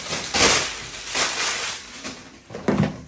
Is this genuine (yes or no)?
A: yes